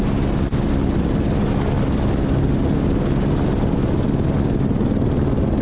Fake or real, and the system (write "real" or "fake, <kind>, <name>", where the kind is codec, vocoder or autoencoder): real